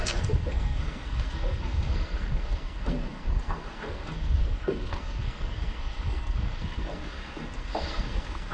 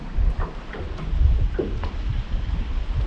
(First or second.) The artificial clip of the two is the first